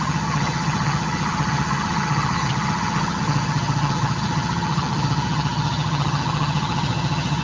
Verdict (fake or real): fake